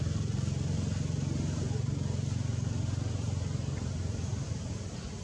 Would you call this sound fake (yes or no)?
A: no